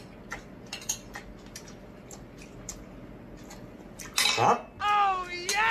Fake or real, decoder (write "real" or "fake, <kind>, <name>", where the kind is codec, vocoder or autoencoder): real